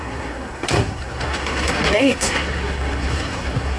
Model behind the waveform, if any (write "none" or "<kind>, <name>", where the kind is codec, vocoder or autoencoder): codec, SNAC